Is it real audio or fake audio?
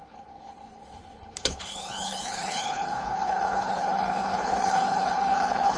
fake